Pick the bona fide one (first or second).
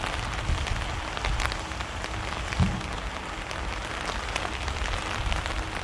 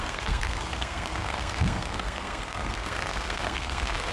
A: first